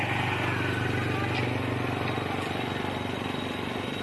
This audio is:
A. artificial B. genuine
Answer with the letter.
B